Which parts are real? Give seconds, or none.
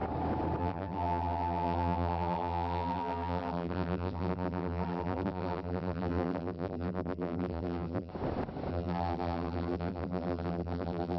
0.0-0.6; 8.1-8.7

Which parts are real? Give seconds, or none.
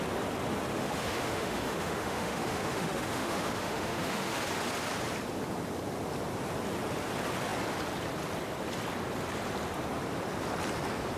0.0-0.7; 4.4-11.2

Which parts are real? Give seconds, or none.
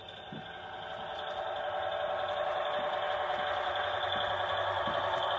0.0-5.4